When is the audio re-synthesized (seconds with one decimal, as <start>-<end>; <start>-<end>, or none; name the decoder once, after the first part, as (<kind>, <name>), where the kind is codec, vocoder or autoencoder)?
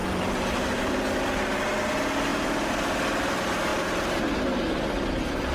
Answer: 0.0-0.9 (vocoder, BigVGAN v2); 2.3-2.9; 3.7-4.2